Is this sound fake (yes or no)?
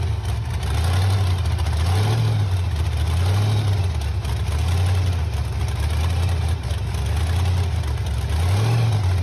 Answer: no